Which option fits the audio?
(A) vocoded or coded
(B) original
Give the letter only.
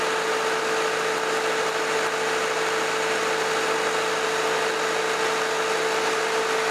B